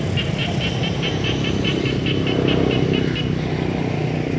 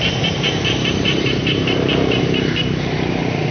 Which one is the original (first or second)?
first